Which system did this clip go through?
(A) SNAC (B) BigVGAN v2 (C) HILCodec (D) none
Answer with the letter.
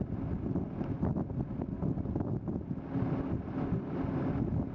D